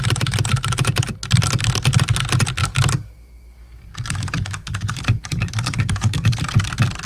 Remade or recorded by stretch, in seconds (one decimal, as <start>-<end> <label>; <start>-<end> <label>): 0.0-2.6 recorded; 2.6-6.4 remade; 6.4-7.1 recorded